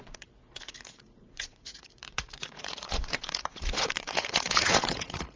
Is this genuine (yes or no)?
no